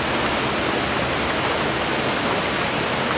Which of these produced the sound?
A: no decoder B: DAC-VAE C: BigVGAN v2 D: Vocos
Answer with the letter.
A